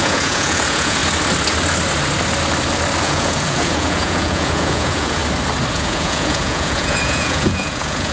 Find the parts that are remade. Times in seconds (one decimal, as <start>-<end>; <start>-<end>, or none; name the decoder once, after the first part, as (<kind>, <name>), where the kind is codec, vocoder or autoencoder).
0.0-1.0 (vocoder, Vocos); 3.0-5.2; 5.7-8.1